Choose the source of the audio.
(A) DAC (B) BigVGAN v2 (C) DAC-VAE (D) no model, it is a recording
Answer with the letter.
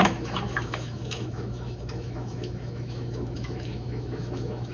C